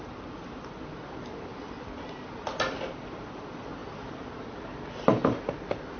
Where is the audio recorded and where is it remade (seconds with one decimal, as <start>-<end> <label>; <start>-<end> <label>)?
0.0-6.0 recorded